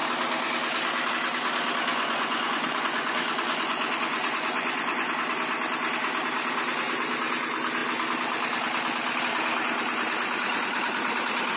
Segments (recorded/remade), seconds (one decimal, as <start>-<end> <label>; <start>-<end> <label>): 0.0-1.9 recorded; 1.9-5.1 remade; 5.1-11.6 recorded